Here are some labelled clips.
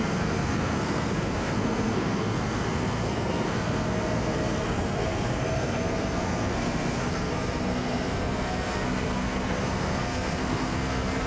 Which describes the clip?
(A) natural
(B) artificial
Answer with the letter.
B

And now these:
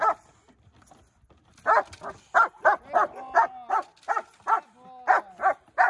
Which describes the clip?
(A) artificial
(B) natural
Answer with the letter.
B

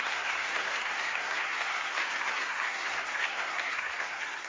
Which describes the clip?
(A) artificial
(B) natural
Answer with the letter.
A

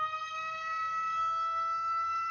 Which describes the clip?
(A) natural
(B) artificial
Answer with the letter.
B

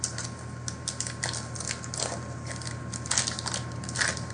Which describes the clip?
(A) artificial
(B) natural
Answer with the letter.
B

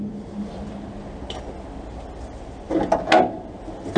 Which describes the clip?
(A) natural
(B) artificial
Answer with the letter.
A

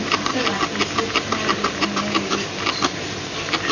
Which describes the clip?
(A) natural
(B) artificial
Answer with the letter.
A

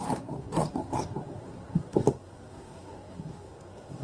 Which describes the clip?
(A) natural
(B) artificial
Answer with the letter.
B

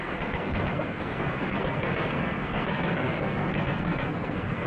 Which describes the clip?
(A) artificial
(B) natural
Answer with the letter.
A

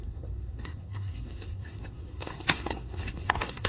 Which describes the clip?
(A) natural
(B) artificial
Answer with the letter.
B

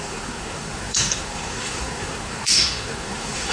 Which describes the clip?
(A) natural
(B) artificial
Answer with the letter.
B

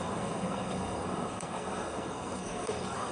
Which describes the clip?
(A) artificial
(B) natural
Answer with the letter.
A